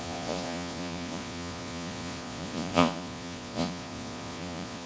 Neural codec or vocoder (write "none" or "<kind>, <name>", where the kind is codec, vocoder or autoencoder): vocoder, Vocos